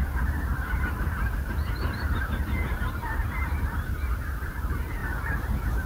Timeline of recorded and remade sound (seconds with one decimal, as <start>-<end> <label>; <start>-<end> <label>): 0.0-5.0 remade; 5.0-5.9 recorded

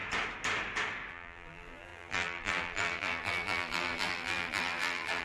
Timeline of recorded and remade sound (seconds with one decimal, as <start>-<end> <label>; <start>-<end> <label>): 0.0-1.1 recorded; 1.1-5.2 remade

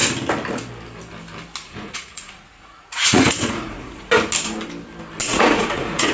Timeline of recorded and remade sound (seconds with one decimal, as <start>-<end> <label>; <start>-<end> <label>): 0.0-1.6 recorded; 1.6-4.1 remade; 4.1-5.2 recorded; 5.2-6.1 remade

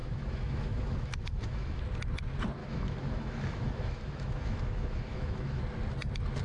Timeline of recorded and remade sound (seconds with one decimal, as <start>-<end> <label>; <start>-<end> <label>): 0.0-1.8 remade; 1.8-2.6 recorded; 2.6-5.6 remade; 5.6-6.4 recorded

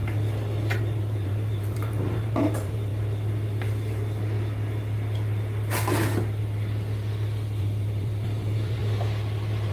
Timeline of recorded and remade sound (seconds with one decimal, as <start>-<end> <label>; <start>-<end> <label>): 0.0-0.8 recorded; 0.8-2.9 remade; 2.9-7.6 recorded; 7.6-8.8 remade; 8.8-9.7 recorded